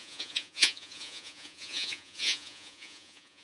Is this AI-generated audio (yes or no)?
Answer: yes